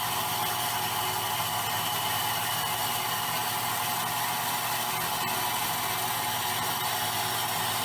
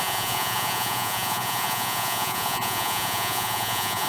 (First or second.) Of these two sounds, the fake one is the second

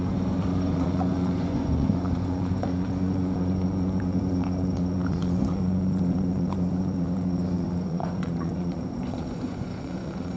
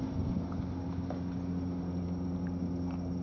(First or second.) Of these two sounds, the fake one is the first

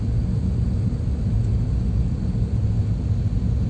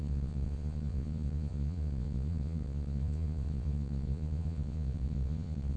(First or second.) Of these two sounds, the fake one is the second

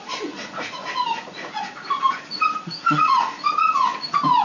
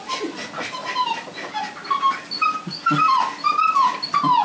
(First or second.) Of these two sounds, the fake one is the first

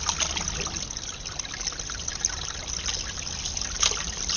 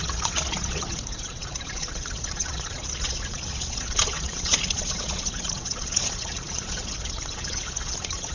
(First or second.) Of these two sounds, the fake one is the second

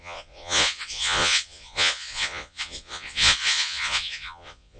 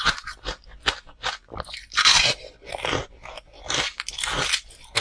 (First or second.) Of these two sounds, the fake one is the first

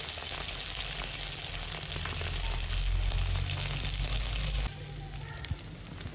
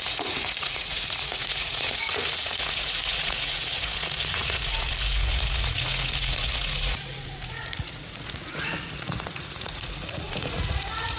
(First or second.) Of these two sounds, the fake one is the second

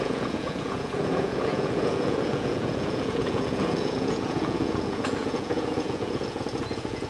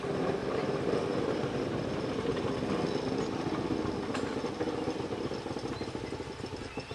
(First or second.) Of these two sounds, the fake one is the first